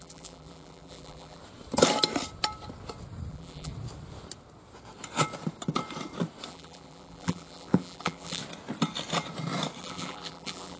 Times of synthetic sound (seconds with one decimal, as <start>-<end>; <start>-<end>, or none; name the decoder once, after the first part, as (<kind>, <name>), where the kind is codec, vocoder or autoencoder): 0.0-1.4 (vocoder, BigVGAN v2); 3.3-3.7; 6.5-8.4; 9.8-10.8